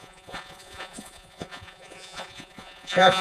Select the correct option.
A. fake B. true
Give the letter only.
A